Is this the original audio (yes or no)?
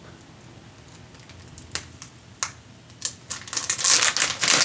yes